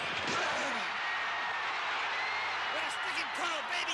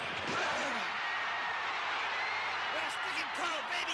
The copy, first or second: second